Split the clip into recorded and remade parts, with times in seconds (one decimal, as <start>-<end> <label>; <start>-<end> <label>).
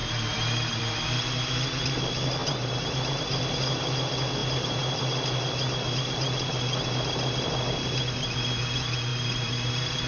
0.0-0.8 remade; 0.8-2.4 recorded; 2.4-3.4 remade; 3.4-4.4 recorded; 4.4-5.0 remade; 5.0-9.1 recorded; 9.1-9.7 remade; 9.7-10.1 recorded